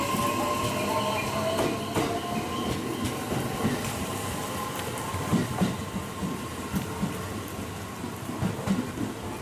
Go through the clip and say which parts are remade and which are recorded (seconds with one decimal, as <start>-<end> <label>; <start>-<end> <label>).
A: 0.0-5.3 recorded; 5.3-6.1 remade; 6.1-9.4 recorded